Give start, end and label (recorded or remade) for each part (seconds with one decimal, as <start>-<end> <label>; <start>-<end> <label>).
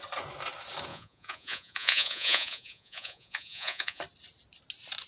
0.0-0.9 recorded; 0.9-4.0 remade; 4.0-5.1 recorded